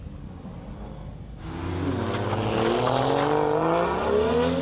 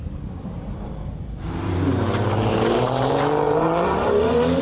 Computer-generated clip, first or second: second